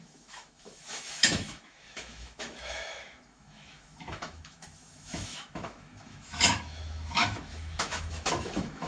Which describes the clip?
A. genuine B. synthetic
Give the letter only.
B